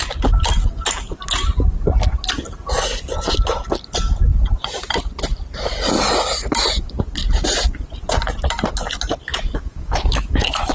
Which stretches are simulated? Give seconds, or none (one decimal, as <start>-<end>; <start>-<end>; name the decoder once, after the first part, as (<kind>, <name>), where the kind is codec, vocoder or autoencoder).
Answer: 9.3-10.7 (autoencoder, DAC-VAE)